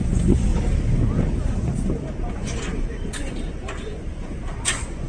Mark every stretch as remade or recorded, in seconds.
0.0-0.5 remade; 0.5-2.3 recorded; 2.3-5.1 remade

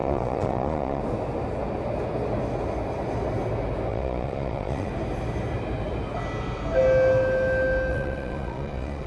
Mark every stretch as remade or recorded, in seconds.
0.0-1.0 remade; 1.0-3.9 recorded; 3.9-4.9 remade; 4.9-7.9 recorded; 7.9-9.1 remade

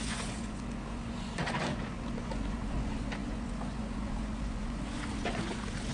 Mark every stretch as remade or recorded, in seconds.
0.0-5.9 remade

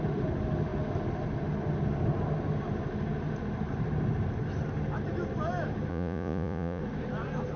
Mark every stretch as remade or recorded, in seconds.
0.0-5.9 recorded; 5.9-6.8 remade; 6.8-7.6 recorded

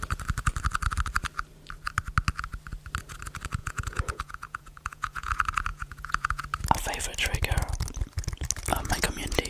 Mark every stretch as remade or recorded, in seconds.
0.0-3.6 recorded; 3.6-5.3 remade; 5.3-5.7 recorded; 5.7-6.4 remade; 6.4-8.7 recorded; 8.7-9.5 remade